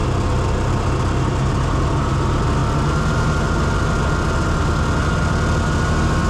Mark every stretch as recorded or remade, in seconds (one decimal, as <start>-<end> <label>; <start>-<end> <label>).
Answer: 0.0-6.3 recorded